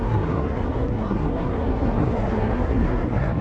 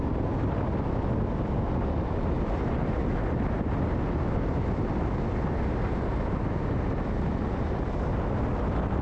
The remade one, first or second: first